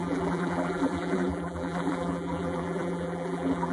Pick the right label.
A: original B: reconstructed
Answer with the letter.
B